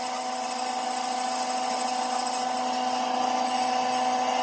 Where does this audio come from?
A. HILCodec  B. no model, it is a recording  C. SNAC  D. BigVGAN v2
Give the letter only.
B